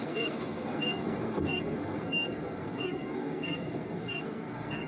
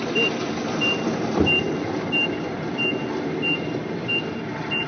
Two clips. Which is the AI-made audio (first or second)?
first